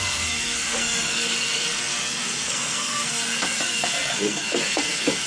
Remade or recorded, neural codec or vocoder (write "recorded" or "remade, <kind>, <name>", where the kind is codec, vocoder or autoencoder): remade, codec, SNAC